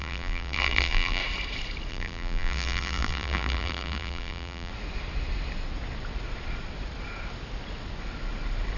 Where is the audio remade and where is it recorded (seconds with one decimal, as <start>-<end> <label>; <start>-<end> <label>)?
0.0-1.2 remade; 1.2-1.9 recorded; 1.9-4.7 remade; 4.7-8.8 recorded

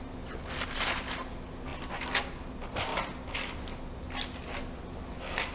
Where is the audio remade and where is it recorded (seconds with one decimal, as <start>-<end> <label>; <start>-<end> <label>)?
0.0-5.5 recorded

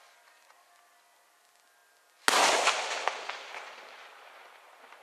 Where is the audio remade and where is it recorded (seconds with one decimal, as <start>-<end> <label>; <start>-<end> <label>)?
0.0-5.0 recorded

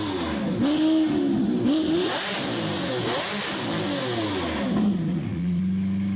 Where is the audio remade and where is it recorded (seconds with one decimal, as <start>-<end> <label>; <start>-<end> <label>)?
0.0-5.1 recorded; 5.1-5.6 remade; 5.6-6.2 recorded

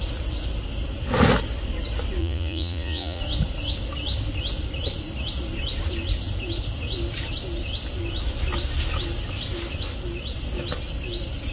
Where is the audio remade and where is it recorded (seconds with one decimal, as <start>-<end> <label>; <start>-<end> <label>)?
0.0-2.2 recorded; 2.2-3.2 remade; 3.2-11.5 recorded

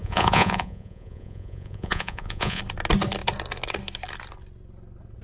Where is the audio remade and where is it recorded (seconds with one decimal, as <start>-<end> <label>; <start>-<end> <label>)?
0.0-2.6 remade; 2.6-5.2 recorded